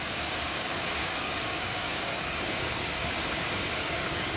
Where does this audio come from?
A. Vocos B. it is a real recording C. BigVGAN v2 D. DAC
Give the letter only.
D